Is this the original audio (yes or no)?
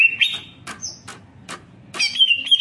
yes